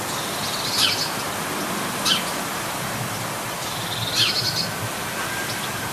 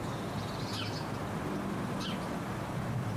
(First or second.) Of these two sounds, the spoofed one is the first